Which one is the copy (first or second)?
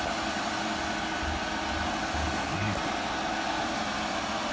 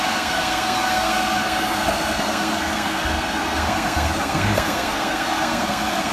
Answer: second